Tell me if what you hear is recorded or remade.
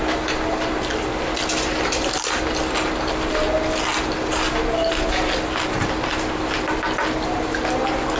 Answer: recorded